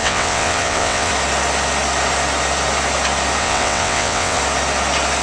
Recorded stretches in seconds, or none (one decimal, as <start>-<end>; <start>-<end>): 1.1-3.4; 4.4-5.2